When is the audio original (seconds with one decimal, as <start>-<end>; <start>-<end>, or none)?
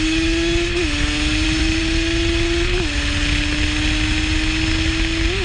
0.0-1.3; 1.8-5.4